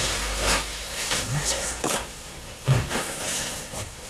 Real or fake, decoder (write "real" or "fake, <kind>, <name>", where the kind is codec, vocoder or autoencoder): fake, codec, SNAC